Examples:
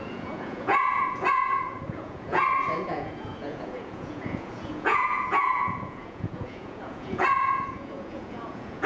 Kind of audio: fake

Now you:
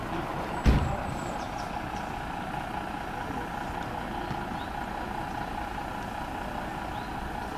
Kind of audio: real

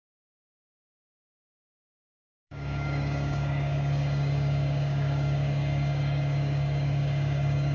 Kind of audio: fake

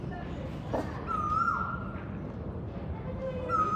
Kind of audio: real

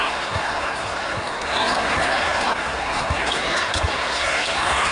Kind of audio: fake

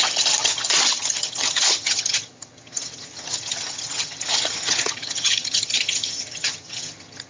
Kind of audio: fake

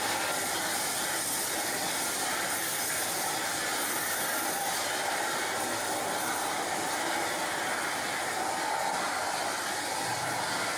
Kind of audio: real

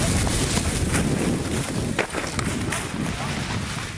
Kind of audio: real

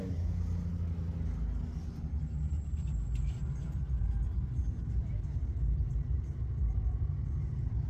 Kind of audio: real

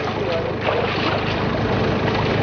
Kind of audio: real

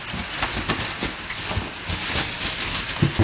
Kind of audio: real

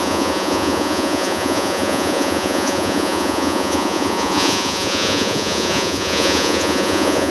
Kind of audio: fake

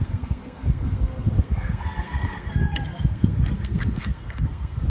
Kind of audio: fake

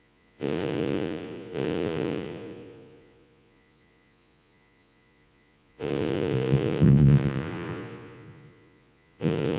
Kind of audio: fake